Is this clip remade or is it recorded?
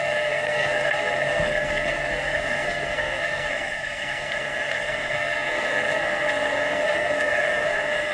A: remade